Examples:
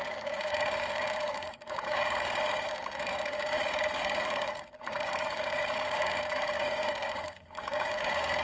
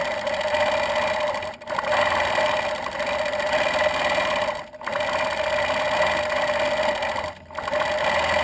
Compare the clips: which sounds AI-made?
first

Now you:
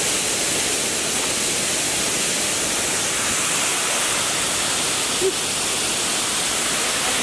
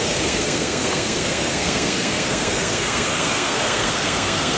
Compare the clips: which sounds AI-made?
second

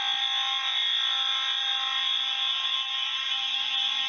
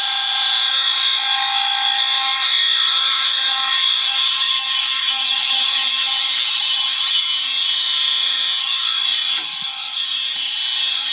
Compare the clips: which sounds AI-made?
second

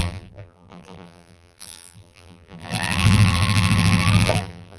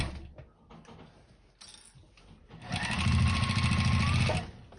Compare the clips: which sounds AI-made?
first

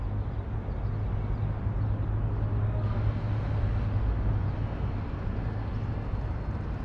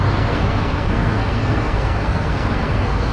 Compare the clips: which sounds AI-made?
second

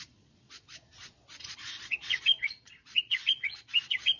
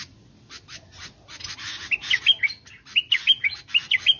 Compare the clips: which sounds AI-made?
first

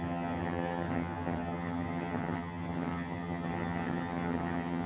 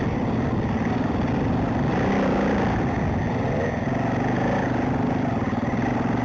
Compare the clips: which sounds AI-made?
first